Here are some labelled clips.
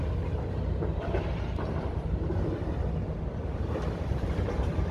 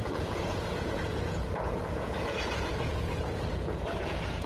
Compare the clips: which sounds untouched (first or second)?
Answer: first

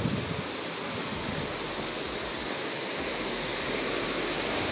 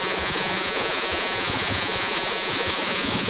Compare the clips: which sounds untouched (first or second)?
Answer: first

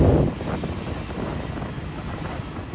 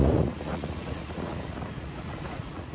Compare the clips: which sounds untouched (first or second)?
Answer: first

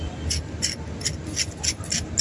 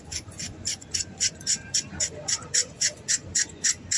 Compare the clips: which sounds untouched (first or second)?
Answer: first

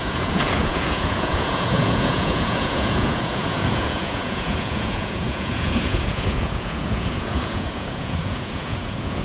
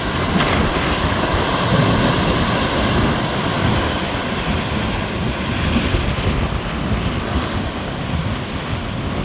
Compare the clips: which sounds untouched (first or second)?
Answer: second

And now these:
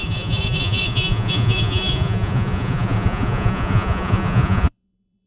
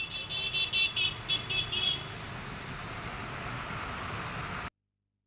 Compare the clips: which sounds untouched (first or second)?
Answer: second